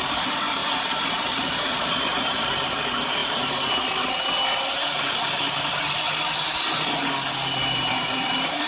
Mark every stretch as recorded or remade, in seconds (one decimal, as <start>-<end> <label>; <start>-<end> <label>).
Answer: 0.0-3.2 remade; 3.2-7.6 recorded; 7.6-8.7 remade